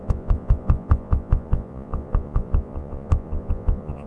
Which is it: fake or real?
fake